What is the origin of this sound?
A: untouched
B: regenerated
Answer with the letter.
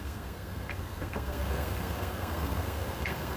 B